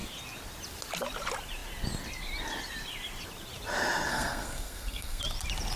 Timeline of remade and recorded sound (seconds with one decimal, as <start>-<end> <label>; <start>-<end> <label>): 0.0-4.1 recorded; 4.1-5.2 remade; 5.2-5.8 recorded